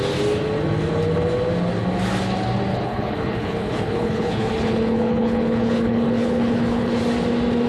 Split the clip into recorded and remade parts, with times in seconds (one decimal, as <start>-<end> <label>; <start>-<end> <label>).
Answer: 0.0-2.7 recorded; 2.7-7.0 remade; 7.0-7.7 recorded